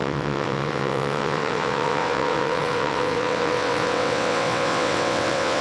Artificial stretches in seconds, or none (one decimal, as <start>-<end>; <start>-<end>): 0.0-5.6